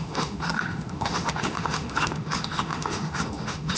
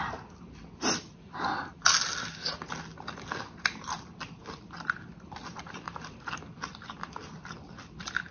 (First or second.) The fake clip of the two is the first